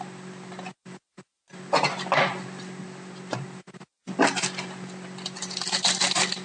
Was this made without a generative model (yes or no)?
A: yes